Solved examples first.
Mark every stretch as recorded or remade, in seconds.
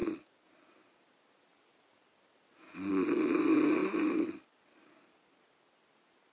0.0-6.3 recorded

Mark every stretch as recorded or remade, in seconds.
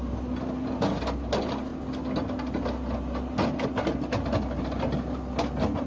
0.0-5.9 recorded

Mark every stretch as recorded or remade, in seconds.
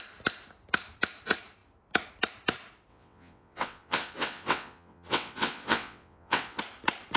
0.0-2.9 recorded; 2.9-6.6 remade; 6.6-7.2 recorded